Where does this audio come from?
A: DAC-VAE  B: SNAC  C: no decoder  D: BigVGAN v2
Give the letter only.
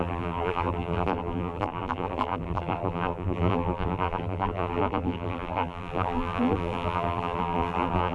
D